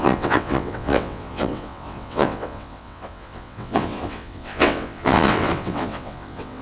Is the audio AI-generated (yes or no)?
yes